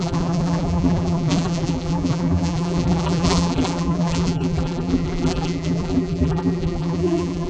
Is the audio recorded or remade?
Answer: remade